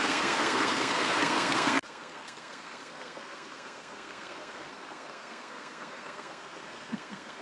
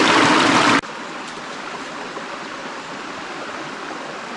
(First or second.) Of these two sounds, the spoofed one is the first